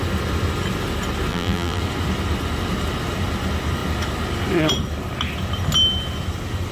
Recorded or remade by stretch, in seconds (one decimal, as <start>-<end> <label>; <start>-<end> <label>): 0.0-1.3 recorded; 1.3-1.8 remade; 1.8-6.7 recorded